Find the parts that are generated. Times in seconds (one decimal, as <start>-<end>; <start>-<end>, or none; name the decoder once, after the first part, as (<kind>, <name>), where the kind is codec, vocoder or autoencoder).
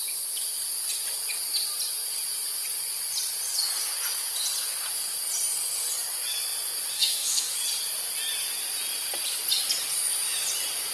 6.9-7.5 (codec, SNAC)